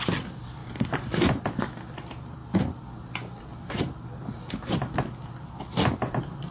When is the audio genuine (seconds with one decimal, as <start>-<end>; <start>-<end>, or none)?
2.4-6.5